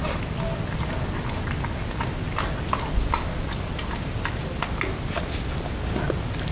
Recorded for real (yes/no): yes